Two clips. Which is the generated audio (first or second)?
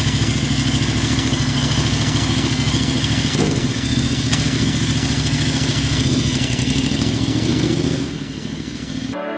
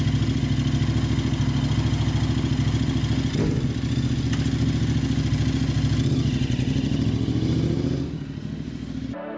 first